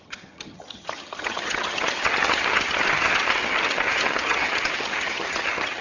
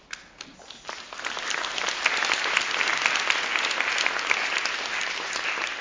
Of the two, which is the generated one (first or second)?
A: first